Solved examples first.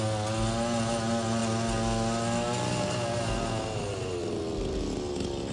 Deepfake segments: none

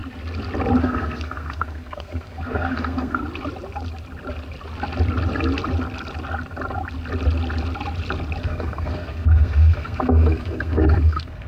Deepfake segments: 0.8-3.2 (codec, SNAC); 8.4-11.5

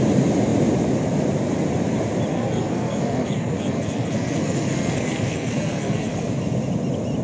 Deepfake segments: 2.3-6.3 (codec, SNAC)

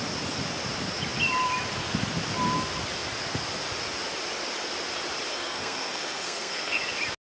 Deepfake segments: 5.3-6.8 (codec, SNAC)